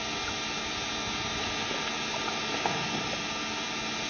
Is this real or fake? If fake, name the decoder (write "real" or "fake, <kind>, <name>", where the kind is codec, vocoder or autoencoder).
real